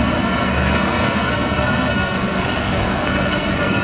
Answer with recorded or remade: remade